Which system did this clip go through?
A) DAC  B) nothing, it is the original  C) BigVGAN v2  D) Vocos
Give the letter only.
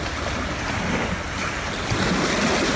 B